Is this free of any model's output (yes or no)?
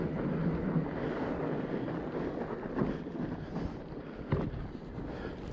yes